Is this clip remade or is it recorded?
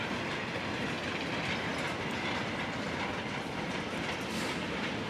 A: recorded